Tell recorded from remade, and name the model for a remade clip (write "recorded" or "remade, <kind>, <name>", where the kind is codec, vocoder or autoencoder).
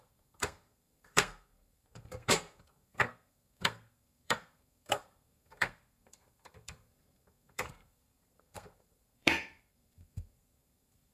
remade, codec, SNAC